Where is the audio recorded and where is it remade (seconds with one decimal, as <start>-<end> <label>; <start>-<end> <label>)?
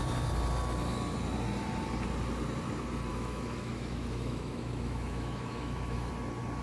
0.0-3.1 recorded; 3.1-6.1 remade; 6.1-6.6 recorded